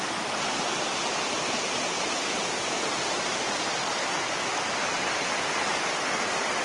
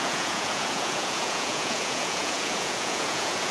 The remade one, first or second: second